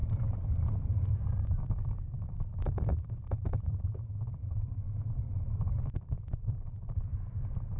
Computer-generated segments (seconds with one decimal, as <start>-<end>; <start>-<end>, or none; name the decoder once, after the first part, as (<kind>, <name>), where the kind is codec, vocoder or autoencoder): 0.0-0.9 (vocoder, BigVGAN v2); 2.9-7.0